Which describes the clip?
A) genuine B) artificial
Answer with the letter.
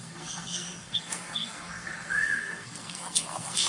B